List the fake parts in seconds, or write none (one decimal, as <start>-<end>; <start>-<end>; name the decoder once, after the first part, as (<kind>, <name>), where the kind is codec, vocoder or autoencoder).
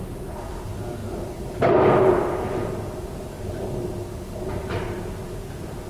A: none